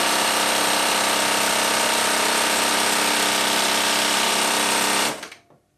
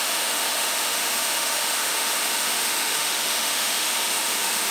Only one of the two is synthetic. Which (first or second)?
second